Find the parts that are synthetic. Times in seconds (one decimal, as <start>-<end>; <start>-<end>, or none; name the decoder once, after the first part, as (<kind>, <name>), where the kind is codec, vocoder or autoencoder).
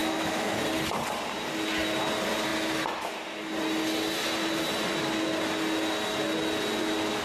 0.0-0.6 (autoencoder, DAC-VAE)